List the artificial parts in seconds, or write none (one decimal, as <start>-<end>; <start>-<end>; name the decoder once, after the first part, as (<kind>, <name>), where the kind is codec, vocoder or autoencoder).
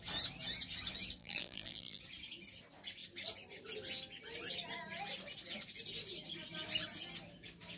1.2-2.0 (vocoder, BigVGAN v2)